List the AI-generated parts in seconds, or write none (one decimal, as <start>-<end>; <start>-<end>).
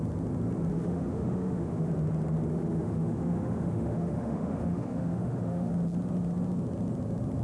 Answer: 0.7-1.9; 2.5-5.7